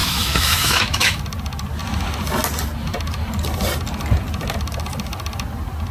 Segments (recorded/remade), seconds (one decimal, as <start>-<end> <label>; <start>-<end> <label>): 0.0-1.2 remade; 1.2-5.9 recorded